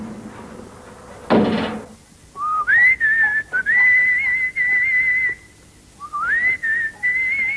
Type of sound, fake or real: real